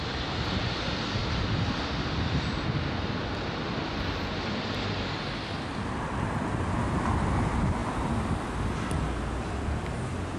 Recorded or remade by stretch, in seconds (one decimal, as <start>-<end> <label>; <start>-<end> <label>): 0.0-7.8 recorded; 7.8-8.8 remade; 8.8-10.4 recorded